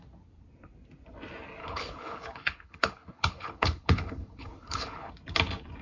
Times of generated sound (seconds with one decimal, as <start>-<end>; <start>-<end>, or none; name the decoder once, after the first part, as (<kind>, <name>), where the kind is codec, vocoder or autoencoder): 1.6-5.1 (codec, HILCodec)

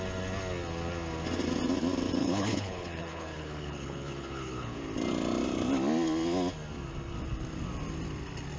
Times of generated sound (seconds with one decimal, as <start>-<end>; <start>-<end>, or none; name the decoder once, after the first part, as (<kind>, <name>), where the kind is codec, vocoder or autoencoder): 2.2-4.8 (codec, HILCodec)

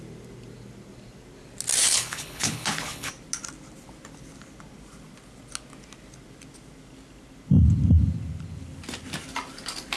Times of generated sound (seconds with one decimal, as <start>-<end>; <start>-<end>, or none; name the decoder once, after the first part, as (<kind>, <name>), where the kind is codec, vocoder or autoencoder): 1.8-3.1 (codec, HILCodec)

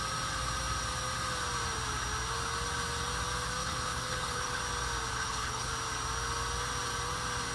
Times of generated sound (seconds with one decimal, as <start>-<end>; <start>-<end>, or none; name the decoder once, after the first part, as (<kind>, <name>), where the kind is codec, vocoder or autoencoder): 3.6-4.6 (codec, HILCodec); 5.1-5.7

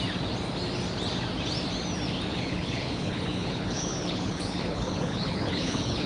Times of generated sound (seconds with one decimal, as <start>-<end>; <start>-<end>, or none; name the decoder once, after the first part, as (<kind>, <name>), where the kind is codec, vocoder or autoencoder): 2.3-6.1 (codec, HILCodec)

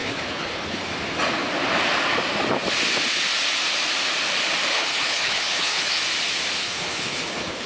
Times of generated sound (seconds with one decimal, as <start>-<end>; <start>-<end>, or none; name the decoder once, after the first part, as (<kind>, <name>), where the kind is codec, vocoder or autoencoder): 0.0-0.8 (codec, HILCodec); 4.7-6.0; 6.6-7.7

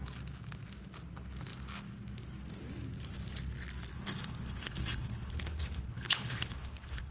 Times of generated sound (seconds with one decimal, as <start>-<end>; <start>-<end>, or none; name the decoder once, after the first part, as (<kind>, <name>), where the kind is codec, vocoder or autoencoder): 3.9-7.1 (codec, HILCodec)